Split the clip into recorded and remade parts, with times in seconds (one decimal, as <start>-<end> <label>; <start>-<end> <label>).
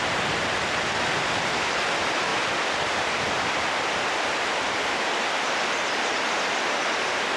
0.0-7.4 recorded